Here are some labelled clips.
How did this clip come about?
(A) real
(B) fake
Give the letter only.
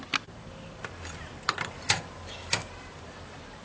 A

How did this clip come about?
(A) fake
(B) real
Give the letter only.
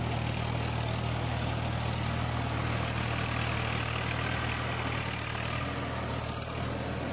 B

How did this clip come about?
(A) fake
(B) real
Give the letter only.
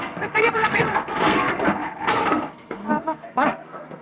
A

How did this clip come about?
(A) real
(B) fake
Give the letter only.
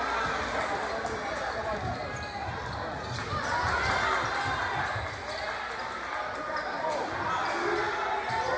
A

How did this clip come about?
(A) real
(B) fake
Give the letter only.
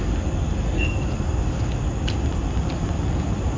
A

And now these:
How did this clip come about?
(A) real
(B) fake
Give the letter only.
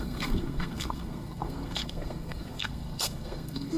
B